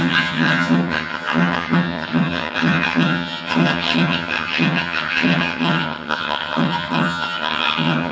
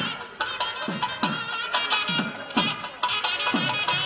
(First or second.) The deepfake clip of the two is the first